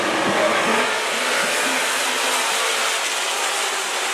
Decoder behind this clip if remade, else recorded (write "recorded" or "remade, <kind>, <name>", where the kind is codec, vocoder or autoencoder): recorded